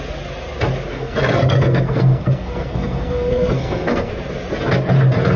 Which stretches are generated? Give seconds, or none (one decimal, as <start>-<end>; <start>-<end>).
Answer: 0.9-4.1